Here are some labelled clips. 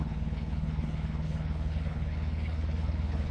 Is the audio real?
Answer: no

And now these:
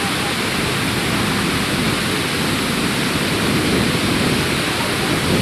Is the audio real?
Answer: yes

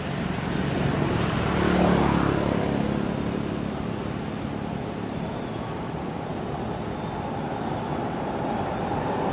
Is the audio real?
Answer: yes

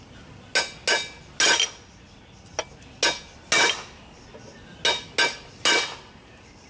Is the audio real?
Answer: yes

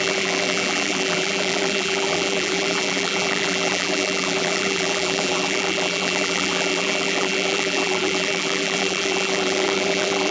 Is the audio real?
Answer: no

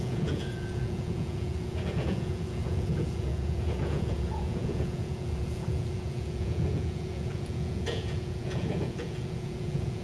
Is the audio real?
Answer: no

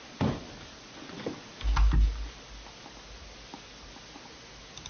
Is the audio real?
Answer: yes